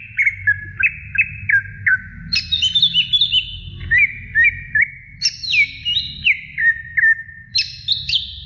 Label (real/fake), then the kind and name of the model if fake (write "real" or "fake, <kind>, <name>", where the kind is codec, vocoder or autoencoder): real